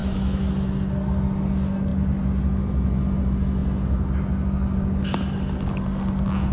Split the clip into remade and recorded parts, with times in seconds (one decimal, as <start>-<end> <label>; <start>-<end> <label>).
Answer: 0.0-0.5 remade; 0.5-6.5 recorded